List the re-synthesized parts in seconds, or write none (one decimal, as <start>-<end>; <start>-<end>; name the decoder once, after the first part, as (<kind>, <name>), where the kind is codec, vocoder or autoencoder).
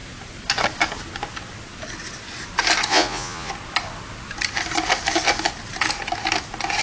2.9-3.5 (vocoder, Vocos)